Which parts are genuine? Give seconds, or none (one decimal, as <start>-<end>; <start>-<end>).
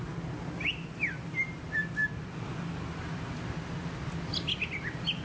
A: 0.0-5.2